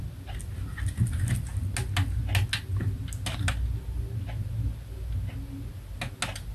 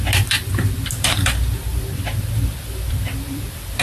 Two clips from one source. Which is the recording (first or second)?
first